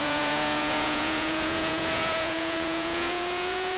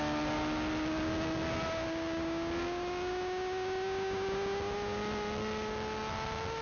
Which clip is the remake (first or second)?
first